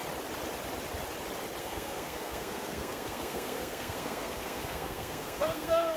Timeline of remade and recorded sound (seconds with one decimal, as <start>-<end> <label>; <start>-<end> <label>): 0.0-1.6 recorded; 1.6-6.0 remade